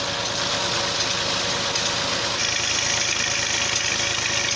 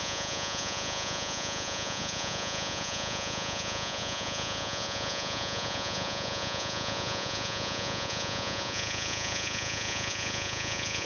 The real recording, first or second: first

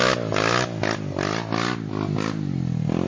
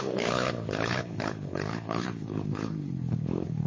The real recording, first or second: first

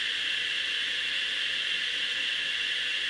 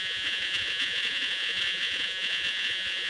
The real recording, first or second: first